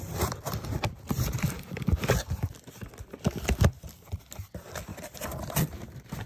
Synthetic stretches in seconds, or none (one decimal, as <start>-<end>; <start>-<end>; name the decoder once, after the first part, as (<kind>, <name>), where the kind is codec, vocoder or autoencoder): none